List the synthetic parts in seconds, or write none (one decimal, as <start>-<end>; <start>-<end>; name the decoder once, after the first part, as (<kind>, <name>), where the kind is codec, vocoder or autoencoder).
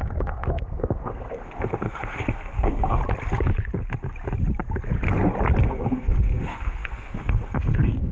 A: 0.0-3.0 (codec, SNAC); 5.6-8.1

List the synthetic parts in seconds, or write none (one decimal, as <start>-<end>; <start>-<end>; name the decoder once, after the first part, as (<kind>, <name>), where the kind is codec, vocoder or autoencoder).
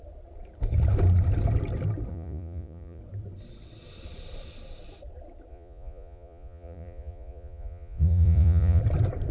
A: 2.1-3.0 (vocoder, Vocos); 5.5-8.8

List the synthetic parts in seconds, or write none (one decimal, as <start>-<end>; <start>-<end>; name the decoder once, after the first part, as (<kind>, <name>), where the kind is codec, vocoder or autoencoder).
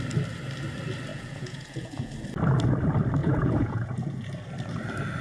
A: 1.1-2.1 (vocoder, Vocos); 3.2-4.1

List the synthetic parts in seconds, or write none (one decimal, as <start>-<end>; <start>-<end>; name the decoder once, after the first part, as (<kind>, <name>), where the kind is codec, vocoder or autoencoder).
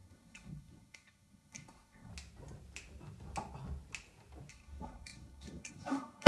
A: 0.0-2.1 (codec, SNAC); 4.5-6.3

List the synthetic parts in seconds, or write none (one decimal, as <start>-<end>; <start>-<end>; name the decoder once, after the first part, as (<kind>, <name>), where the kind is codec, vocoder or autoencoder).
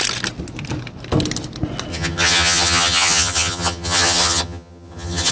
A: 1.9-5.3 (vocoder, HiFi-GAN)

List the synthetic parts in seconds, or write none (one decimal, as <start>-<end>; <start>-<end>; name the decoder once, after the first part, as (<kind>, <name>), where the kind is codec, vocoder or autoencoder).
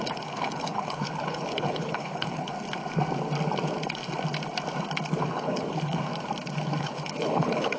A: 0.0-2.5 (codec, HILCodec); 5.2-6.1; 6.8-7.8